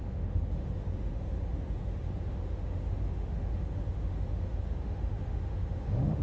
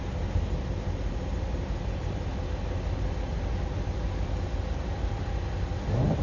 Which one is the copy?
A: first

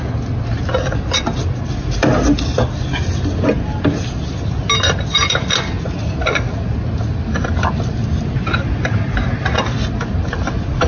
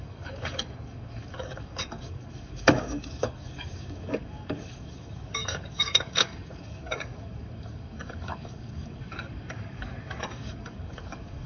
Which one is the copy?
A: second